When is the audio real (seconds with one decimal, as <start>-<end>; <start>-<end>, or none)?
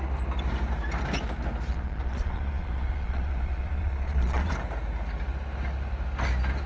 0.0-1.7; 4.5-6.7